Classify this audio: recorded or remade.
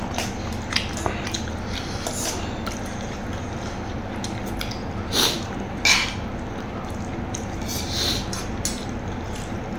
recorded